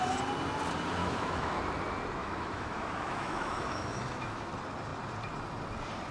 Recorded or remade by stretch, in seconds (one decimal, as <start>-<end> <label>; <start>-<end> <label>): 0.0-1.0 recorded; 1.0-1.6 remade; 1.6-2.2 recorded; 2.2-4.5 remade; 4.5-6.1 recorded